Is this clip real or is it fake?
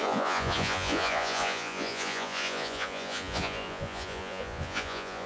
fake